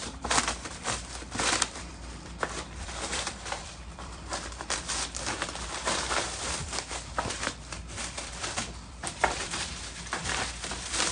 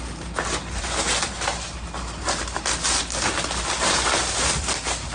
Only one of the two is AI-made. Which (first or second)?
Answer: first